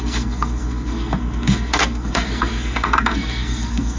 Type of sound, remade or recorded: remade